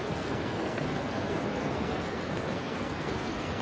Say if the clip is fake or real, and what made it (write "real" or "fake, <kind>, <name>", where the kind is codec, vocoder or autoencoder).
fake, codec, SNAC